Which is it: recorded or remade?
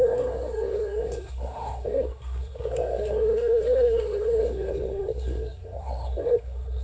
remade